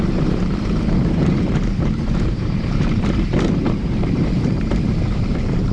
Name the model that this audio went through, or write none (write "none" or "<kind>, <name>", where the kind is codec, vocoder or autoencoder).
vocoder, BigVGAN v2